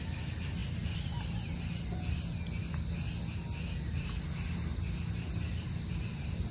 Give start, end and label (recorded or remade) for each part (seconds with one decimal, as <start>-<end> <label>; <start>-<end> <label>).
0.0-6.5 recorded

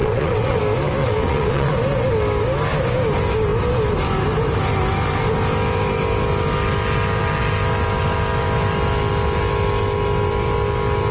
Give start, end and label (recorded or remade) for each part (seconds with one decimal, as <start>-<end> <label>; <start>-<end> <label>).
0.0-0.6 remade; 0.6-1.0 recorded; 1.0-1.7 remade; 1.7-11.1 recorded

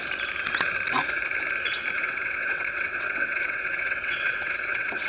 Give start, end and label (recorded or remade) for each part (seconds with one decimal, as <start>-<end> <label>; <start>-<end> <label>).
0.0-2.0 recorded; 2.0-5.1 remade

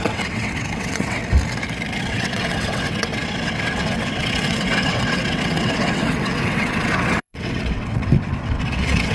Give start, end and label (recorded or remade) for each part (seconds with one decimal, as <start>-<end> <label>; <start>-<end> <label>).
0.0-1.2 remade; 1.2-2.0 recorded; 2.0-9.1 remade

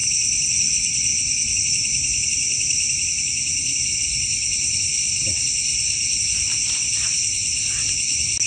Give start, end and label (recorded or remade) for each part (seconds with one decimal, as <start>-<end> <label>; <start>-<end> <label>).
0.0-8.5 recorded